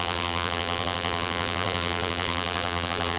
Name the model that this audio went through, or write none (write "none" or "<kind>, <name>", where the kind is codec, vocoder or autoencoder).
vocoder, BigVGAN v2